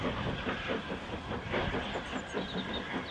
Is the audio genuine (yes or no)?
yes